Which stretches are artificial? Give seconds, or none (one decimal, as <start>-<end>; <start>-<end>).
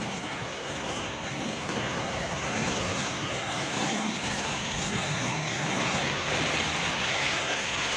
0.0-6.3; 6.9-8.0